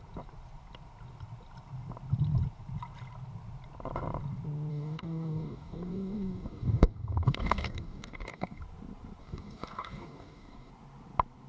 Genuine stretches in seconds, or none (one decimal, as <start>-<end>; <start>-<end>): 0.0-4.7; 8.6-9.2; 10.7-11.5